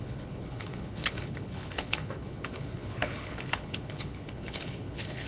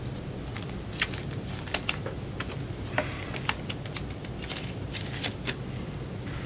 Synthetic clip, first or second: first